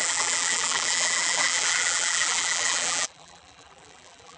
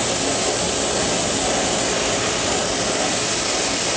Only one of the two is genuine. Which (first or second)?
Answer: second